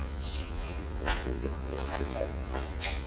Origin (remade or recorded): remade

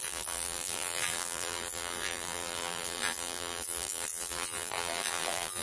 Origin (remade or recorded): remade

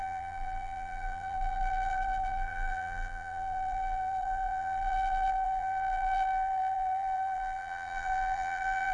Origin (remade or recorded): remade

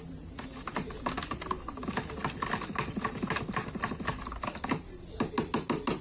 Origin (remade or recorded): recorded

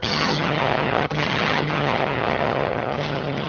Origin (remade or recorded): remade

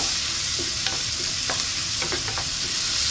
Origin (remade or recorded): recorded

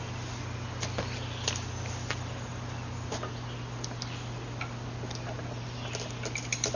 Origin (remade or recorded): recorded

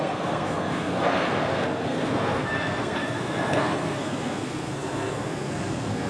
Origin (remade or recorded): remade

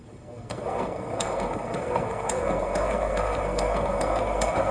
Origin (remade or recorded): remade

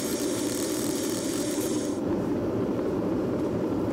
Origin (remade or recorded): remade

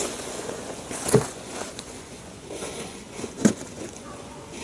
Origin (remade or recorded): remade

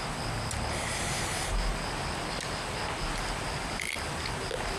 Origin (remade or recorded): recorded